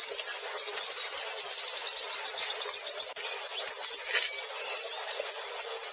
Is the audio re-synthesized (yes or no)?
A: no